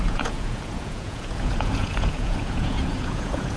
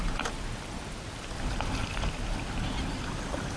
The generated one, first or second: first